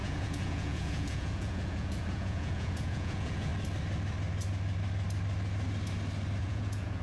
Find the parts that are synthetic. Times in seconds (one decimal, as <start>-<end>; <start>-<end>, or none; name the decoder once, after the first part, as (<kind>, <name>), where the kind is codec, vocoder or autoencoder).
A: 0.0-3.5 (vocoder, Vocos); 6.4-7.0